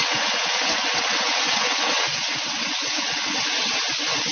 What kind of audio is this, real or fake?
fake